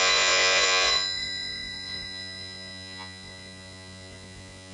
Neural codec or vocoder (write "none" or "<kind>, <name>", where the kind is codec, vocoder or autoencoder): vocoder, Vocos